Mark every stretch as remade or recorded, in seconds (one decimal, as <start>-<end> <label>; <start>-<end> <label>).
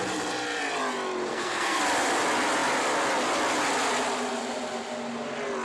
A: 0.0-1.3 recorded; 1.3-1.8 remade; 1.8-5.6 recorded